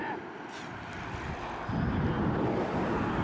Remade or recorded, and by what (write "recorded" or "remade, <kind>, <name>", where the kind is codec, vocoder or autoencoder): remade, vocoder, BigVGAN v2